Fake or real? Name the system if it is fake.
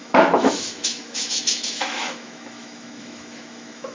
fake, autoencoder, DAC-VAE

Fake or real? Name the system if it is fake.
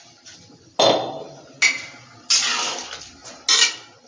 real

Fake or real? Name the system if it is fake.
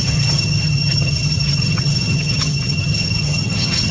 fake, vocoder, HiFi-GAN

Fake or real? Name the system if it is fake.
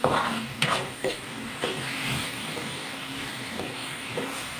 fake, codec, DAC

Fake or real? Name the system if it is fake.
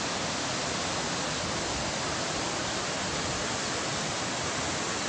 real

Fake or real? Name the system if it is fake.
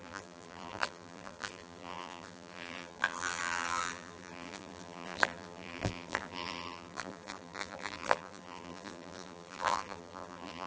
fake, vocoder, BigVGAN v2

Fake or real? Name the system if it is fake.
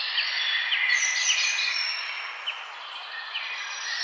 real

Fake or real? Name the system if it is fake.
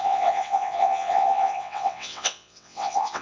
fake, vocoder, WaveNeXt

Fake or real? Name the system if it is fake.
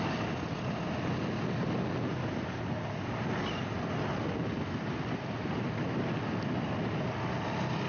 real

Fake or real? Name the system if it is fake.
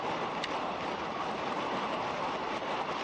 real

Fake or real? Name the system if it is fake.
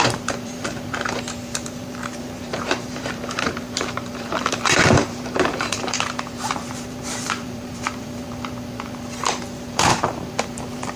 fake, vocoder, BigVGAN v2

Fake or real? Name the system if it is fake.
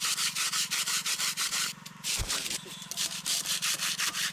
fake, vocoder, BigVGAN v2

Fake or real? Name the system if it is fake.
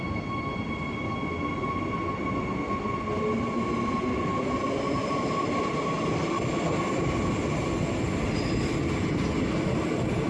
real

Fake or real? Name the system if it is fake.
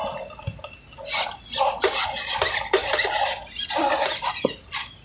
real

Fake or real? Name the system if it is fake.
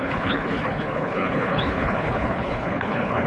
fake, codec, HILCodec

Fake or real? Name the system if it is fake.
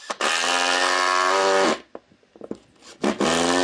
real